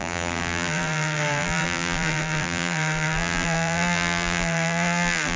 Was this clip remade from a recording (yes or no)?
yes